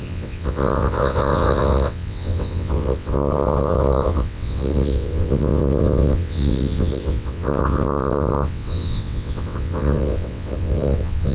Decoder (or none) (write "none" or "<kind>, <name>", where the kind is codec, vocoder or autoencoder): vocoder, WaveNeXt